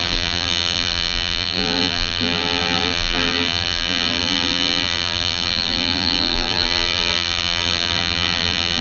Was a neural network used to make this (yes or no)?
yes